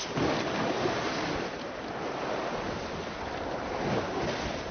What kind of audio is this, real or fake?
real